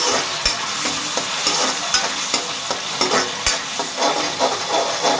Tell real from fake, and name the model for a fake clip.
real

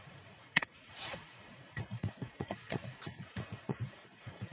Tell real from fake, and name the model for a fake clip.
fake, vocoder, Vocos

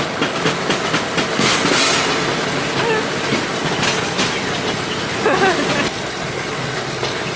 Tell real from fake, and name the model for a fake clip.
real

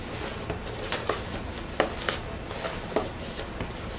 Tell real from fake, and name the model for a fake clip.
real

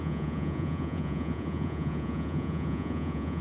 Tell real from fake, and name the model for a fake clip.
fake, vocoder, Vocos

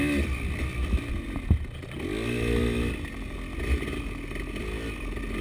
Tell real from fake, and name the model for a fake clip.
real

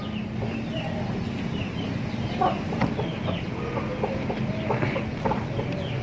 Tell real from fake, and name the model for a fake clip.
real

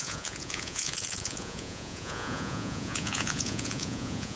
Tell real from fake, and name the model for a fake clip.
fake, vocoder, Vocos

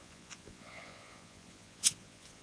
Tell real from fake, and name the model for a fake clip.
fake, vocoder, Vocos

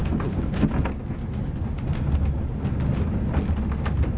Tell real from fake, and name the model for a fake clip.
real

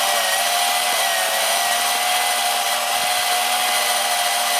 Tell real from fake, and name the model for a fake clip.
real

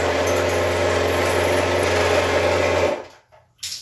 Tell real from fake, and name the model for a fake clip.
real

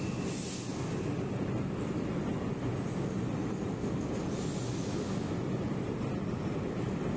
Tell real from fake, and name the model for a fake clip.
real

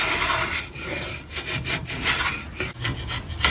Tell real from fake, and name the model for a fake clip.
real